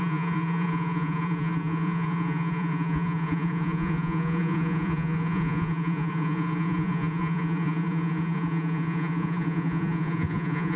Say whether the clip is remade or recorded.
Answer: remade